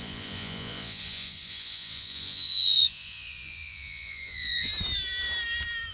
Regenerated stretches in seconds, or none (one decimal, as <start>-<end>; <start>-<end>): 0.0-4.7

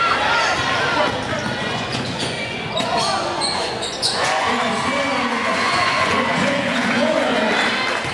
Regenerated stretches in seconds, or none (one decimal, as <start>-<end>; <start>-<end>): 1.6-4.5; 5.3-7.5

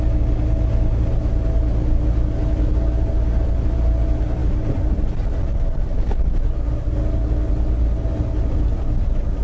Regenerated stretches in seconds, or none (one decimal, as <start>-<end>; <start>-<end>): none

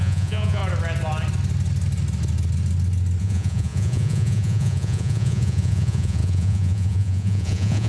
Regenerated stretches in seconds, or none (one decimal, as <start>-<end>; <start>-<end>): 0.0-0.6; 3.2-7.9

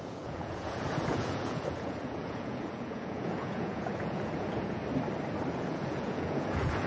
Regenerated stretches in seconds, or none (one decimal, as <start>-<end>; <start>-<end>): 0.0-4.8; 5.5-6.9

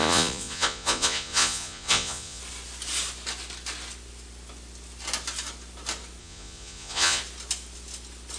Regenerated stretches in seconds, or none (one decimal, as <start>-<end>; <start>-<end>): 0.0-2.4; 6.2-7.2